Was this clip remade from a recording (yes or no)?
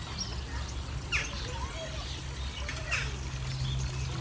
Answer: no